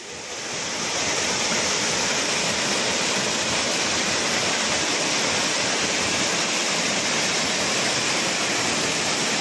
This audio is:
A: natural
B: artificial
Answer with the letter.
A